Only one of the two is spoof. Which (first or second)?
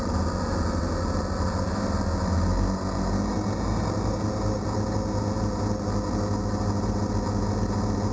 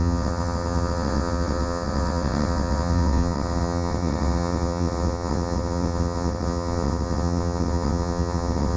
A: second